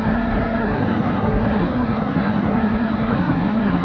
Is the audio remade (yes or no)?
yes